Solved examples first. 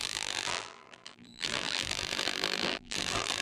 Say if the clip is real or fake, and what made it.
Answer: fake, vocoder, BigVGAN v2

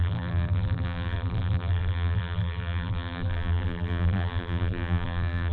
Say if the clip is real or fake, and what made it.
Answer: fake, vocoder, BigVGAN v2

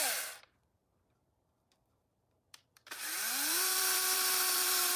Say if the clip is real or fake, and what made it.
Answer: fake, vocoder, BigVGAN v2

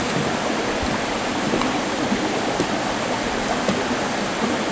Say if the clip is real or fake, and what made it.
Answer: real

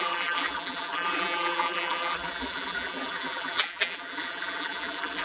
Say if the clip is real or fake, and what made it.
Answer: fake, vocoder, BigVGAN v2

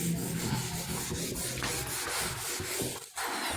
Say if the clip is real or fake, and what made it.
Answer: real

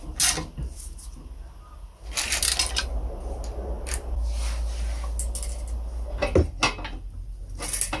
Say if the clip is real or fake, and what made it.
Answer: real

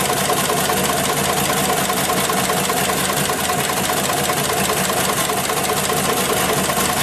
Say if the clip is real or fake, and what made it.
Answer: real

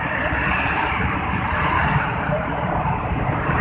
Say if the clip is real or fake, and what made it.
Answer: fake, vocoder, BigVGAN v2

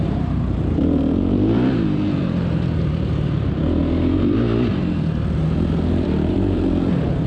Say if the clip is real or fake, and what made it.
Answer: fake, vocoder, BigVGAN v2